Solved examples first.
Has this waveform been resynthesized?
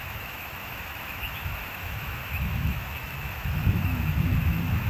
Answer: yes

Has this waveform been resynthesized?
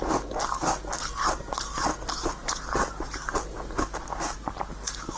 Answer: no